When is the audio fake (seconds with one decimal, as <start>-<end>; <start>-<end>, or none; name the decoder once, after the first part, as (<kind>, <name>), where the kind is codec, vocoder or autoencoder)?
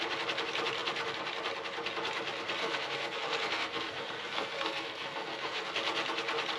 2.6-5.7 (codec, SNAC)